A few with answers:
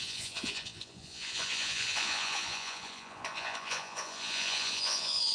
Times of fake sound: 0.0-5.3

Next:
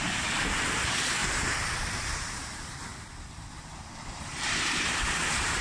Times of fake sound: 0.0-5.6

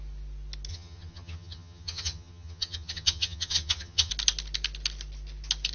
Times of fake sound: 0.7-4.1

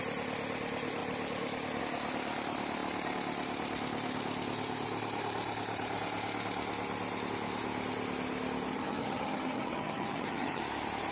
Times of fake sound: 8.7-10.6

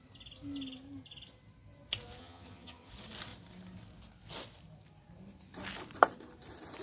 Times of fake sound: 2.2-2.9

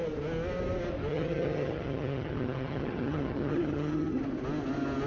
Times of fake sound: 1.1-4.2